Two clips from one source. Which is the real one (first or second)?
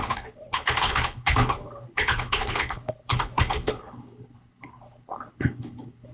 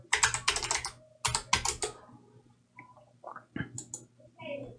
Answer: second